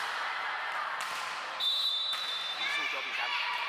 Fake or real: fake